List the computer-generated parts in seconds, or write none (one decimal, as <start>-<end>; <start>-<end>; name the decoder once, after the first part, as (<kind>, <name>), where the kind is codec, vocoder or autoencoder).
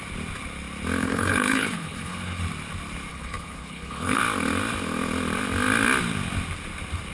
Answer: 1.0-2.4 (codec, HILCodec); 3.1-4.2